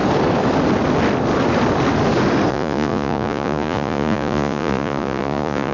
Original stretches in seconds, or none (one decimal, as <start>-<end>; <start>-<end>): 0.0-2.5